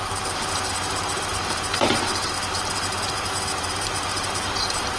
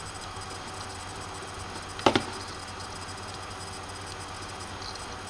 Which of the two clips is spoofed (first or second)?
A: first